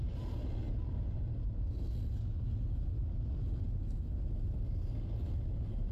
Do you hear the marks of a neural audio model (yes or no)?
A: no